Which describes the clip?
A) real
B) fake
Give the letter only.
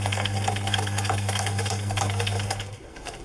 B